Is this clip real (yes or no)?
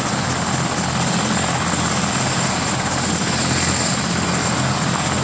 yes